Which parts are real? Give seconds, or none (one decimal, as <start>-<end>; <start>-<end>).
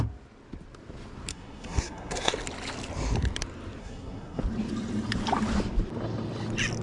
0.0-1.3; 2.3-3.8; 4.4-6.8